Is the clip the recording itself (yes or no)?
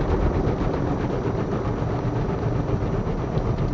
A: yes